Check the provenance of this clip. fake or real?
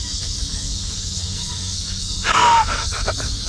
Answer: fake